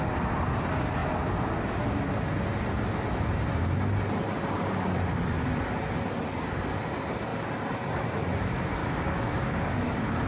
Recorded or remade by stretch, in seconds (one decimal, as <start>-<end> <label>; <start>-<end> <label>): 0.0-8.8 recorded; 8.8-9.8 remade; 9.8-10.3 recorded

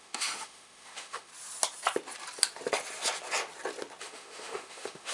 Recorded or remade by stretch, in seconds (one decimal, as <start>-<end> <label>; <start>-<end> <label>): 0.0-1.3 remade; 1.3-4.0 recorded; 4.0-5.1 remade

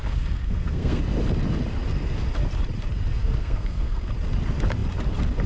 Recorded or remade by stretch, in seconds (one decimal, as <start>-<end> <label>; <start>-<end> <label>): 0.0-1.0 remade; 1.0-3.2 recorded; 3.2-4.1 remade; 4.1-5.5 recorded